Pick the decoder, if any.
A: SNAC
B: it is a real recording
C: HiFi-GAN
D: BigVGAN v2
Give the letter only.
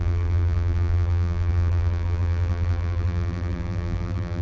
D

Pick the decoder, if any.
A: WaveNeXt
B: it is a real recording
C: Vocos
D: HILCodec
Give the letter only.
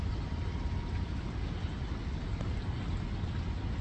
B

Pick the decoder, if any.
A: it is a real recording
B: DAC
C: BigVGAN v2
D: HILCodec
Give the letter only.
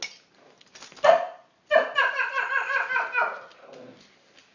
A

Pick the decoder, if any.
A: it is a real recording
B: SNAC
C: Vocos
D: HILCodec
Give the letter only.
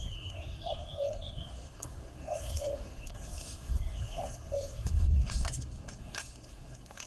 B